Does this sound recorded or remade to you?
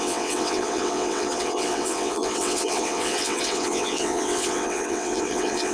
remade